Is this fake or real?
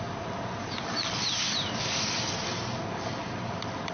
real